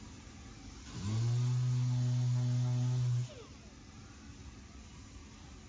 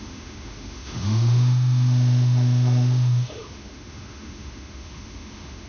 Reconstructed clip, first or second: second